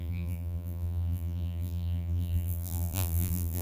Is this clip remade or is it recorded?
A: remade